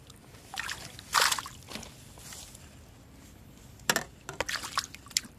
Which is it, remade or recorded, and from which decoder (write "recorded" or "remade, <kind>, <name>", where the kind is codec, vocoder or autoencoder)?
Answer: recorded